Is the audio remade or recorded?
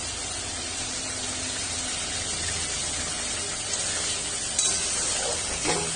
recorded